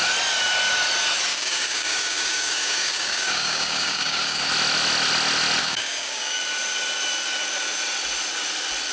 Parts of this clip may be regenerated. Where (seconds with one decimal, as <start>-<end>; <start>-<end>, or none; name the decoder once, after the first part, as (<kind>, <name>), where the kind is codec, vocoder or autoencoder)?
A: 1.3-4.5 (codec, DAC); 5.6-6.4